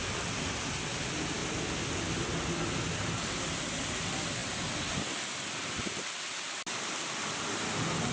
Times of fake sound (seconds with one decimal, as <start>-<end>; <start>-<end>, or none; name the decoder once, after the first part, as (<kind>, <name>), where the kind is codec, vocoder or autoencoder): none